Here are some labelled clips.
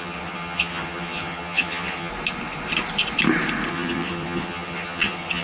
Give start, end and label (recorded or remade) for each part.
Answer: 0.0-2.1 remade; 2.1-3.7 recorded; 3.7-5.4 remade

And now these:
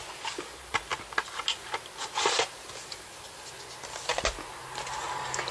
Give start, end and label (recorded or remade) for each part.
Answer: 0.0-5.5 recorded

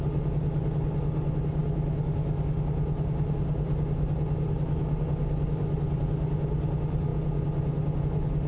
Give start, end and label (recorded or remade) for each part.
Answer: 0.0-8.5 recorded

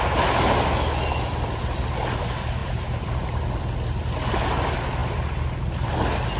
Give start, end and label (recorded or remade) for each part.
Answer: 0.0-6.4 recorded

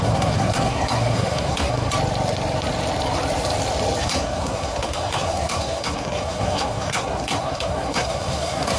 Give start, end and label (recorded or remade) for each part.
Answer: 0.0-1.9 remade; 1.9-4.0 recorded; 4.0-8.8 remade

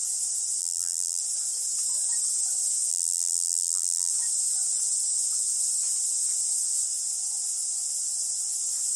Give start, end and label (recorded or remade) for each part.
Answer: 0.0-0.6 recorded; 0.6-1.2 remade; 1.2-2.9 recorded; 2.9-4.1 remade; 4.1-9.0 recorded